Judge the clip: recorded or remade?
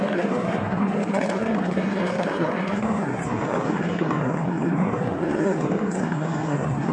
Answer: remade